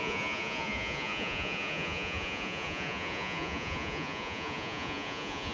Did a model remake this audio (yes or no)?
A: yes